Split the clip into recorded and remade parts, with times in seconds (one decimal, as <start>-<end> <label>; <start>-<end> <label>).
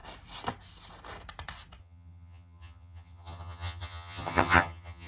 0.0-1.8 recorded; 1.8-5.1 remade